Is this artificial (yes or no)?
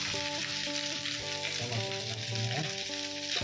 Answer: no